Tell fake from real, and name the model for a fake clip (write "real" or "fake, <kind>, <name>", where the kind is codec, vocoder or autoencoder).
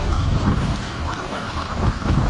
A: fake, codec, DAC